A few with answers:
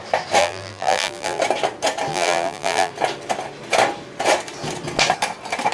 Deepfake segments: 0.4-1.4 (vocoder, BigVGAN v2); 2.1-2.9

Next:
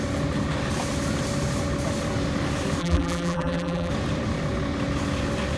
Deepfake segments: 2.8-3.9 (vocoder, BigVGAN v2)

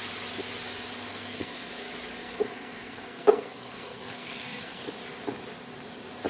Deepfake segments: 1.1-1.7 (codec, SNAC); 2.2-4.8

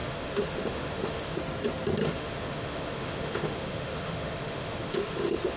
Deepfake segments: 0.0-1.4 (autoencoder, DAC-VAE); 2.0-5.6

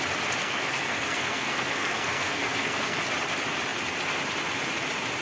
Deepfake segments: 0.4-3.0 (codec, SNAC)

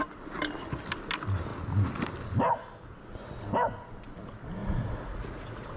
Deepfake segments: 4.6-5.8 (vocoder, Vocos)